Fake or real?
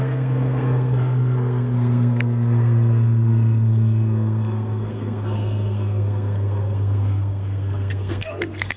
fake